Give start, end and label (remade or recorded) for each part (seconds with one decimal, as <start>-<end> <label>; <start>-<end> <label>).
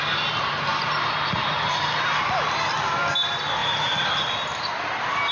0.0-5.3 recorded